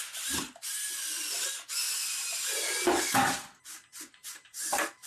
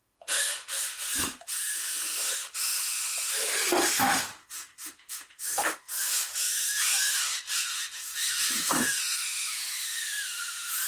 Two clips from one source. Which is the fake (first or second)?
second